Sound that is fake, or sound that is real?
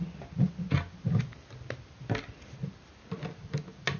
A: real